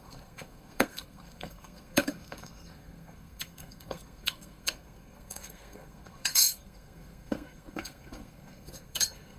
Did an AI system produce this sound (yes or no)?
yes